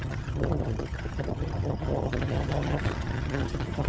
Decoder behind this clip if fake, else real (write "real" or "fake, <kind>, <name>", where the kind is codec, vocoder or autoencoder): fake, vocoder, HiFi-GAN